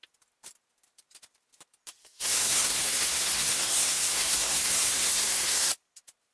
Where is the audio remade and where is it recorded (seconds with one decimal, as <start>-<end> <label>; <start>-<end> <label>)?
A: 0.0-2.0 recorded; 2.0-5.7 remade; 5.7-6.3 recorded